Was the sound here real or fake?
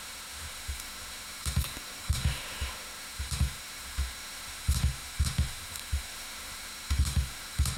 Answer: fake